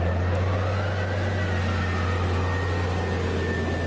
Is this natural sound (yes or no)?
yes